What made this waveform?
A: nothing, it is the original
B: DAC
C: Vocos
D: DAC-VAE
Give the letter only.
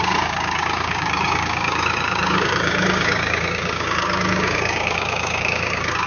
B